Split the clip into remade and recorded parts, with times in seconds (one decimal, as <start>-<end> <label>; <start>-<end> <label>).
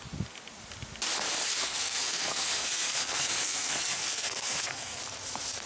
0.0-1.6 recorded; 1.6-5.0 remade; 5.0-5.7 recorded